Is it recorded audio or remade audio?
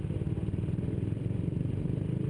recorded